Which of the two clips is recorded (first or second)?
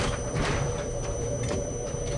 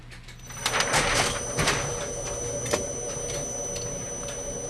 second